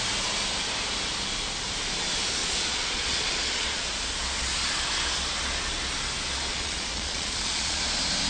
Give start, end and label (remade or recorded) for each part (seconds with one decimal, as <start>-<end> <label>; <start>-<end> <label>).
0.0-2.4 recorded; 2.4-4.1 remade; 4.1-6.5 recorded; 6.5-7.8 remade; 7.8-8.3 recorded